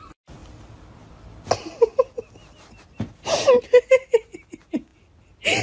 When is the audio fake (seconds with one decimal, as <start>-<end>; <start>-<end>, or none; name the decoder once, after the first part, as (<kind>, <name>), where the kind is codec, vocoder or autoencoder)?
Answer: none